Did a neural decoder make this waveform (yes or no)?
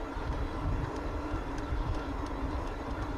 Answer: yes